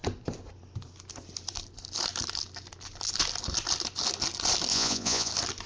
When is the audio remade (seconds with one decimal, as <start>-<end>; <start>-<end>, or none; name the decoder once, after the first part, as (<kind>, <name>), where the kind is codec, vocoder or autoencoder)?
4.7-5.3 (vocoder, Vocos)